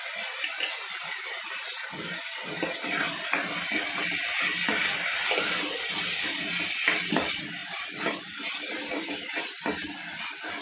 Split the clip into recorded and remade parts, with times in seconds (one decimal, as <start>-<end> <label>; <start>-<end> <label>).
0.0-10.6 recorded